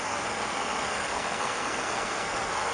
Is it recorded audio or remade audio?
remade